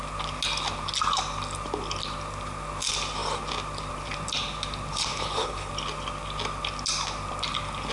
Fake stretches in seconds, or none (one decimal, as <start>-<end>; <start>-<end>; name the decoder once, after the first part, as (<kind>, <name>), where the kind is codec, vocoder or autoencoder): 5.1-5.7 (codec, HILCodec)